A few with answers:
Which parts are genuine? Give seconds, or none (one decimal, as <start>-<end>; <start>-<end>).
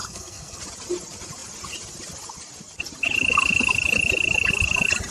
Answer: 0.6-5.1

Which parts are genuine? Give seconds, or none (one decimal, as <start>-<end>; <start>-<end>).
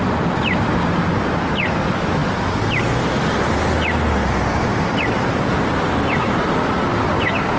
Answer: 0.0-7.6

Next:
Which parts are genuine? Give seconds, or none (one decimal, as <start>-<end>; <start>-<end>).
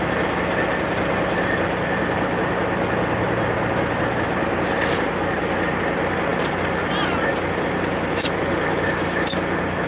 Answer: 0.0-9.9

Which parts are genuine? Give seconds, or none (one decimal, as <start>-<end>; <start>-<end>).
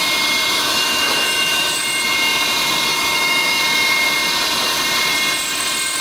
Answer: 0.0-0.5; 1.8-2.9; 3.6-6.0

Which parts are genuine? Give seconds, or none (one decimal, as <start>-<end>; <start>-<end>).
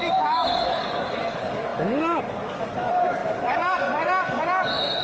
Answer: none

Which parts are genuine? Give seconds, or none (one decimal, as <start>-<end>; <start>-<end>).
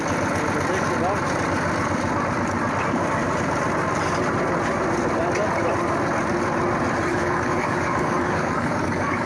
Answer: 0.0-7.1